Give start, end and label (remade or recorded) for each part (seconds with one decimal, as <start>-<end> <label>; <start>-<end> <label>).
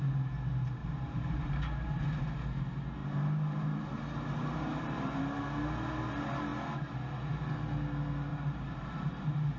0.0-0.8 recorded; 0.8-1.5 remade; 1.5-3.0 recorded; 3.0-5.2 remade; 5.2-8.3 recorded; 8.3-9.6 remade